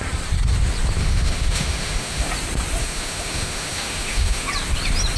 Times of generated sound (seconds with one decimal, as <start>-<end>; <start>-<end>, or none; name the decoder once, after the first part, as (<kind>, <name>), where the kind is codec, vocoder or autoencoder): 1.0-2.3 (autoencoder, DAC-VAE); 2.8-4.5

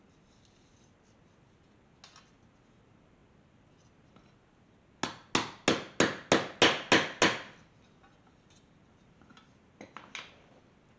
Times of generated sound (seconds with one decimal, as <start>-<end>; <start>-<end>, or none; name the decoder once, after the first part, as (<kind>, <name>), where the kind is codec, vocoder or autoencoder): none

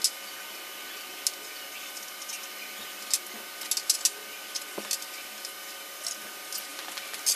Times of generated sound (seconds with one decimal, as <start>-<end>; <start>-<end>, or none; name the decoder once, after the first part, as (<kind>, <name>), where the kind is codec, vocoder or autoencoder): none

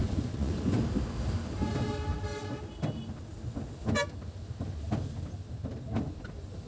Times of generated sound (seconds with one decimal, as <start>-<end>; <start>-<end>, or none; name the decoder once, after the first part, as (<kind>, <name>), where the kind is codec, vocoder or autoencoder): 0.0-0.8 (vocoder, Vocos)

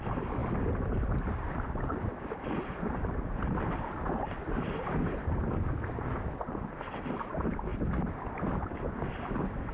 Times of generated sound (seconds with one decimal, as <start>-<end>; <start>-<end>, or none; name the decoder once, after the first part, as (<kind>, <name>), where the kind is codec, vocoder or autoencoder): none

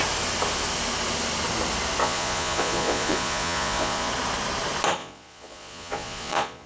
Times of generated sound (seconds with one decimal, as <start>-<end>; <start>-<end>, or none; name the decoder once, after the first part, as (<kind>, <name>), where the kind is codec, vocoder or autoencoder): 2.0-4.1 (vocoder, Vocos); 5.0-6.7